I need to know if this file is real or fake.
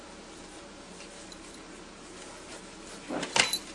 real